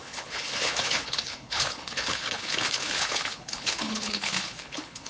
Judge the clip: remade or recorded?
remade